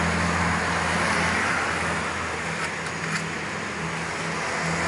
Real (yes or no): yes